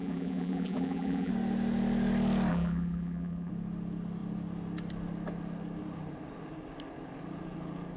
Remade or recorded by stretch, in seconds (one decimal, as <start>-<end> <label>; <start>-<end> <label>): 0.0-1.3 remade; 1.3-2.5 recorded; 2.5-3.5 remade; 3.5-8.0 recorded